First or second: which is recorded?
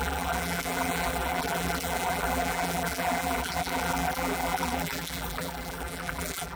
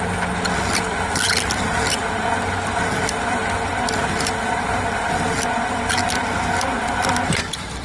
second